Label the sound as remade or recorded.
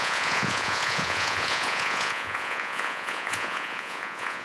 remade